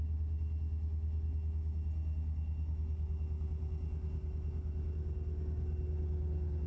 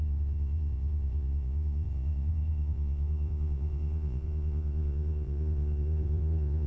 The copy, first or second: second